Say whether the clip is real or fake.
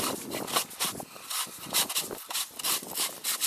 real